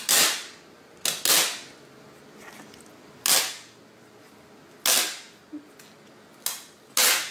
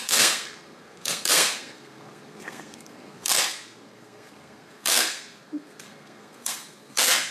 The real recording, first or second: first